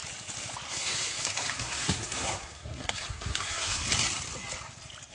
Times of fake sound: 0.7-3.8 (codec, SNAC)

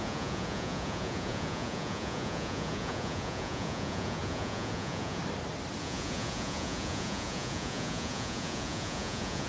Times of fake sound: 0.0-5.2 (vocoder, Vocos); 5.8-9.5

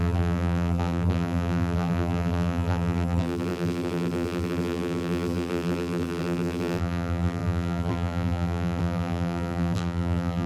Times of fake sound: 0.0-10.5 (vocoder, BigVGAN v2)

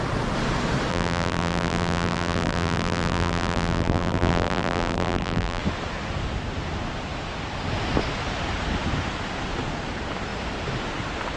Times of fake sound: 0.9-5.6 (vocoder, BigVGAN v2)